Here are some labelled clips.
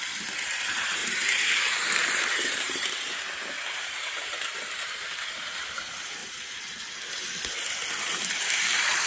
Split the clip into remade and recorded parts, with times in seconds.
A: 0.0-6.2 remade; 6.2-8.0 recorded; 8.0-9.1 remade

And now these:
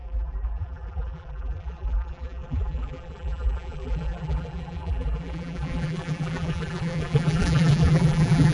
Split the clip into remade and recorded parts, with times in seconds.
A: 0.0-8.5 remade

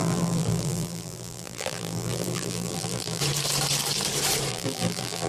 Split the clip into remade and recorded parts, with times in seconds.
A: 0.0-3.2 remade; 3.2-4.5 recorded; 4.5-5.3 remade